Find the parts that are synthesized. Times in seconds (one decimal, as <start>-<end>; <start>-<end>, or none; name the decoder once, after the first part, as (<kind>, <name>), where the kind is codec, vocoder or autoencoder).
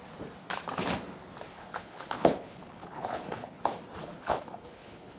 1.5-3.6 (codec, HILCodec); 4.0-5.2